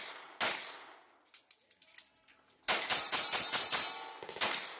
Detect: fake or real real